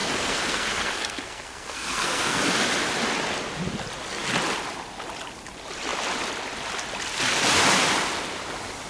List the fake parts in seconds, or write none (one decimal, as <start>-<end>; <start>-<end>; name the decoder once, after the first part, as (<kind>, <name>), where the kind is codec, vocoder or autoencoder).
0.0-2.4 (codec, SNAC)